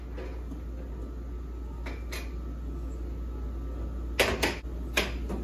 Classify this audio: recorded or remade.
recorded